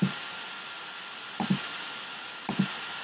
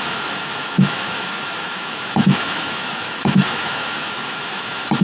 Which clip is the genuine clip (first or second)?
first